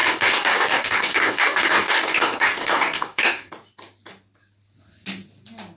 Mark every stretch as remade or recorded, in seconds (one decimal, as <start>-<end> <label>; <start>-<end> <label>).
0.0-3.5 remade; 3.5-5.8 recorded